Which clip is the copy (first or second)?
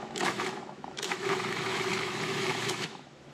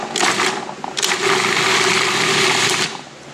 first